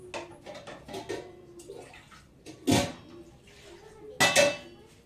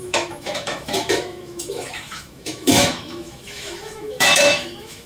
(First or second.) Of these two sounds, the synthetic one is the second